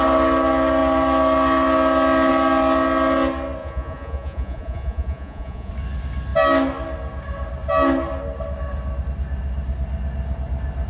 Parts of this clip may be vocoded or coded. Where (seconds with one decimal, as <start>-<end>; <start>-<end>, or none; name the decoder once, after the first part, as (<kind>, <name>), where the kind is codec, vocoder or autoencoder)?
3.6-5.7 (vocoder, Vocos)